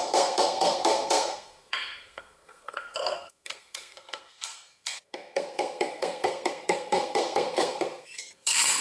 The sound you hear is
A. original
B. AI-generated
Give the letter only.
B